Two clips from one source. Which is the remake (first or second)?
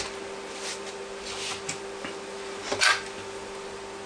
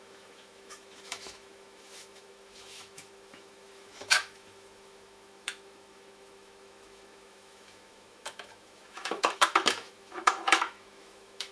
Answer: second